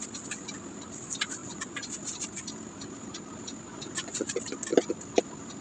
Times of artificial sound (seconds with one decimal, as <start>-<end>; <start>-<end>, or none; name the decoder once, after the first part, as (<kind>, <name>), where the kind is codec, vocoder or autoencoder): 1.4-1.9 (vocoder, Vocos); 3.7-4.3